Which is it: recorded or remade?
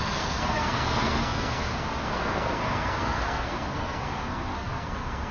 remade